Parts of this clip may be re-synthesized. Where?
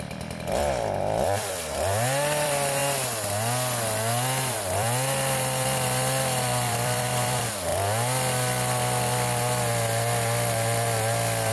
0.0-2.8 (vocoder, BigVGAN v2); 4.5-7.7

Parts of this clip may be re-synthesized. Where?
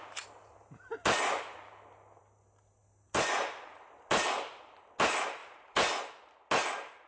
5.4-6.0 (vocoder, BigVGAN v2)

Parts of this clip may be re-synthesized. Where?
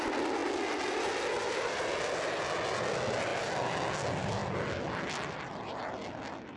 none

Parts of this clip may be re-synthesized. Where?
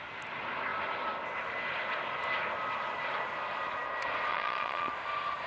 4.3-4.9 (vocoder, Vocos)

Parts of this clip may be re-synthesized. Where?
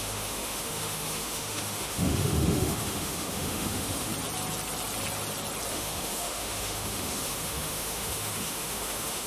0.0-4.1 (autoencoder, DAC-VAE); 5.7-9.3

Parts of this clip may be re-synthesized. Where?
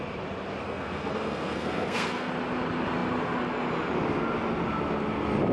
0.6-2.3 (codec, SNAC)